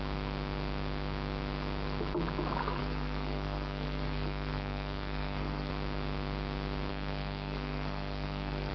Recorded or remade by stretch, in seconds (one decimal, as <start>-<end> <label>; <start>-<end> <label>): 0.0-2.8 recorded; 2.8-5.7 remade; 5.7-6.9 recorded; 6.9-8.7 remade